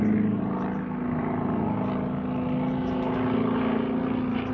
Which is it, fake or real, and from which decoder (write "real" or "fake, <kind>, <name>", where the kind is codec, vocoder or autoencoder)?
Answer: real